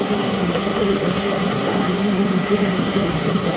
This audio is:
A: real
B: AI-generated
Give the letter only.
B